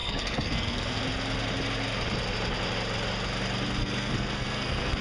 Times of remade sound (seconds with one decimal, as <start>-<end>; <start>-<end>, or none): 0.0-1.0; 3.8-5.0